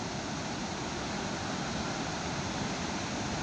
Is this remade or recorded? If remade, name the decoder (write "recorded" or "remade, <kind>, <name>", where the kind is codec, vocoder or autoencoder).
recorded